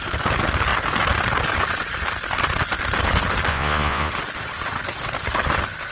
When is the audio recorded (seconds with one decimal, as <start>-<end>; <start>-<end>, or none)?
0.0-3.5; 4.1-5.9

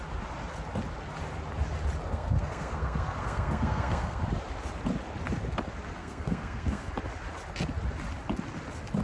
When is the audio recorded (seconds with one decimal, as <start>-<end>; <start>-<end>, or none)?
0.0-2.1; 4.2-6.0; 6.9-9.0

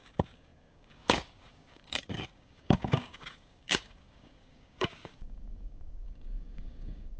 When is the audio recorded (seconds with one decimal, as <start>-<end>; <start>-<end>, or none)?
none

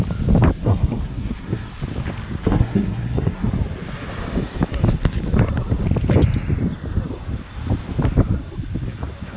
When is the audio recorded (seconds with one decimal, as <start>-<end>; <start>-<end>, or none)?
0.0-0.6; 1.7-2.4; 3.5-9.4

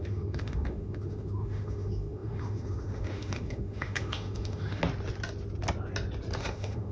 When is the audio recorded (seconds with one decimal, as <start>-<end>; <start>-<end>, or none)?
4.8-6.4

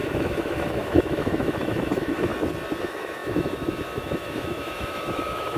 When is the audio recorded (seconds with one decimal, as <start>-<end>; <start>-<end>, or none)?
2.3-2.8